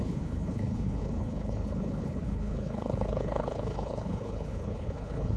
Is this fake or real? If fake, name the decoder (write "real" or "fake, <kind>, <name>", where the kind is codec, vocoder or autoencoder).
fake, codec, HILCodec